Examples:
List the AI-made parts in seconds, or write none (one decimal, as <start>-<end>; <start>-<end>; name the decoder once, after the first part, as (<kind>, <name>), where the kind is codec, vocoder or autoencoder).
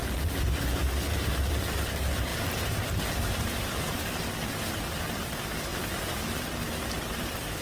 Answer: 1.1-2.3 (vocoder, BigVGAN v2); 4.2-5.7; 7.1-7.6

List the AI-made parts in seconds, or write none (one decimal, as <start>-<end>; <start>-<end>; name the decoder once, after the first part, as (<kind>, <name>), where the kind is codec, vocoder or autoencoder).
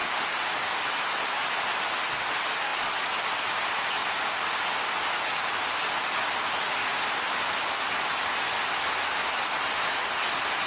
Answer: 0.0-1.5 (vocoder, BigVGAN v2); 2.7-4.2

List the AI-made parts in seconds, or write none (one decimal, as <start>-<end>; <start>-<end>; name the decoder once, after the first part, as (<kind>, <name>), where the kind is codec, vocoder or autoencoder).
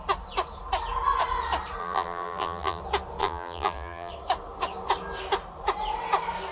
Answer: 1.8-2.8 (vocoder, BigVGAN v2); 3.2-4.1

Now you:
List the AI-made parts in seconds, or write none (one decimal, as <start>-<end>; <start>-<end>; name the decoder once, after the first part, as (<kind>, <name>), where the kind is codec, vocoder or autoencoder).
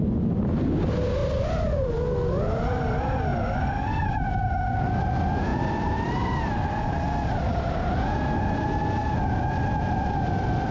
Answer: 1.2-1.9 (vocoder, BigVGAN v2); 5.5-6.5